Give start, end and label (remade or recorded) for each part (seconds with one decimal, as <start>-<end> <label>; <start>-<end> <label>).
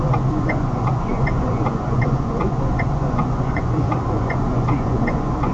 0.0-5.5 remade